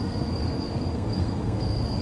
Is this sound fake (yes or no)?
yes